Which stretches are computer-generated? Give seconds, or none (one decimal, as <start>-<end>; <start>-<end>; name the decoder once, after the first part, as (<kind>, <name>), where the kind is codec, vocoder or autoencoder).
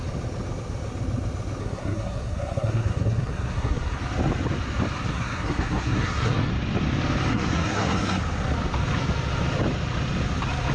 1.6-4.0 (codec, SNAC); 5.1-6.5; 7.3-8.2